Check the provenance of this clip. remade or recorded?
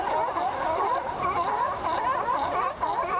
recorded